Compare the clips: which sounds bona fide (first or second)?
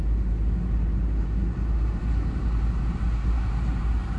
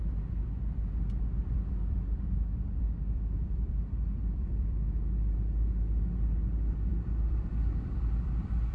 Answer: first